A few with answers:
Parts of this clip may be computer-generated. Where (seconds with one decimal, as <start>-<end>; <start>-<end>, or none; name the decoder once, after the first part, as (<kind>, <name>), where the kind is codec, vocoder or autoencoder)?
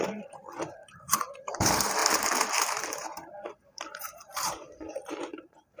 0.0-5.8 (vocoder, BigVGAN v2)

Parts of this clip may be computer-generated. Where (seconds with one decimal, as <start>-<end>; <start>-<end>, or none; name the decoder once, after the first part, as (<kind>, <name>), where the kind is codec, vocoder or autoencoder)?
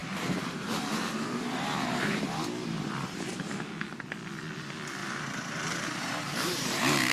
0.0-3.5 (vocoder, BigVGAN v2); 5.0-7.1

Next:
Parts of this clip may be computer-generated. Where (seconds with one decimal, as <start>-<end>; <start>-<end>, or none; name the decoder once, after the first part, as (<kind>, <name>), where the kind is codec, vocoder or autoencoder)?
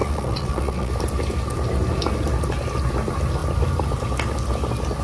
0.0-0.9 (vocoder, Vocos)